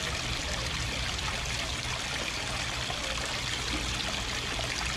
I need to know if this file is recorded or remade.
recorded